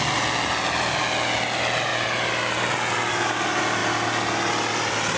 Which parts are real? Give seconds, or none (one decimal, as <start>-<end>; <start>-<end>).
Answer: 0.0-5.2